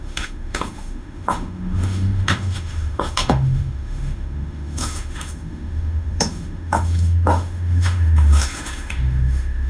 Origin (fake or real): fake